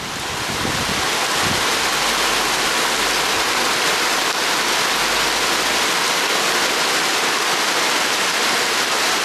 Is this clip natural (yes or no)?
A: yes